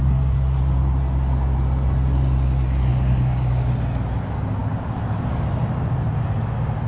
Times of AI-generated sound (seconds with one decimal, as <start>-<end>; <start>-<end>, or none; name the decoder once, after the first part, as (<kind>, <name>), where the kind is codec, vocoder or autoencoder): 2.9-3.7 (codec, DAC)